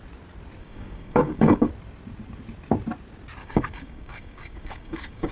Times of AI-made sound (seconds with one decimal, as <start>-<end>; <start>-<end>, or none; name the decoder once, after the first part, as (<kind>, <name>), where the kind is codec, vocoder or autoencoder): 0.6-1.7 (codec, DAC); 3.4-5.3